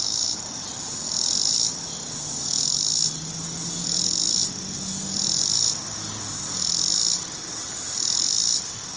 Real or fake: real